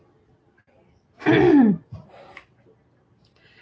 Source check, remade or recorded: recorded